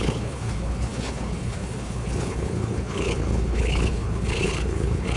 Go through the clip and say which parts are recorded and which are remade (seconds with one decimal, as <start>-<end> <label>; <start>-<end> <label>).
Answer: 0.0-5.2 remade